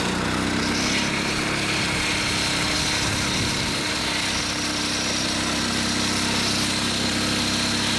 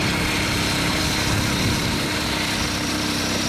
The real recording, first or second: first